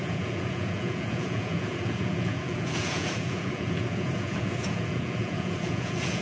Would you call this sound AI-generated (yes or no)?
yes